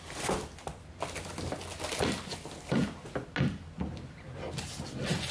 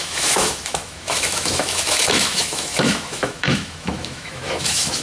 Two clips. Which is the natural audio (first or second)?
first